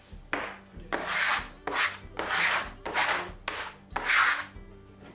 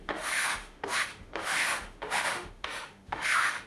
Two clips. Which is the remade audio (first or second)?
second